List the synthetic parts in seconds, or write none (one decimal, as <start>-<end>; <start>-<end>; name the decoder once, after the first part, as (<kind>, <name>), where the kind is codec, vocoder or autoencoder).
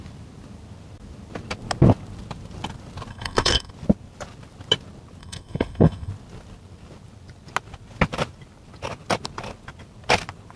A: 3.1-3.7 (codec, SNAC); 5.2-6.1